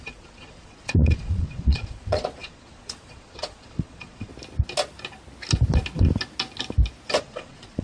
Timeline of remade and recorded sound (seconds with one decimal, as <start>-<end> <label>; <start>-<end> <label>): 0.0-4.3 remade; 4.3-7.2 recorded; 7.2-7.8 remade